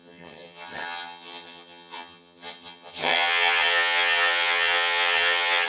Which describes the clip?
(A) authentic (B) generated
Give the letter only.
B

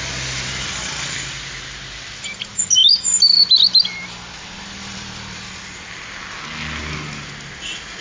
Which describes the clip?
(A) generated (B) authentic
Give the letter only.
B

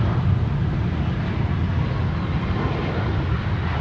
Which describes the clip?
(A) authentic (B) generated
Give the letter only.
A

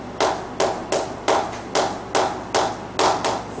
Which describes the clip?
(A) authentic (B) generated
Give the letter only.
A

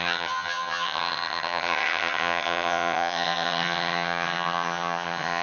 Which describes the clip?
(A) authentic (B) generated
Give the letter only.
B